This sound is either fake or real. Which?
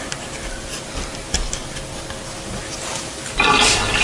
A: real